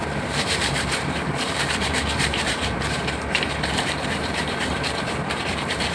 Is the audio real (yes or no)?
no